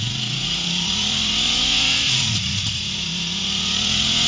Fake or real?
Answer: fake